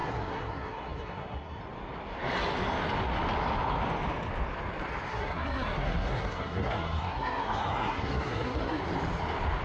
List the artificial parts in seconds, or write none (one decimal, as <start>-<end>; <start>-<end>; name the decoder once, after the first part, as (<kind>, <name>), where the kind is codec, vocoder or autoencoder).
0.0-1.6 (codec, SNAC); 5.1-8.8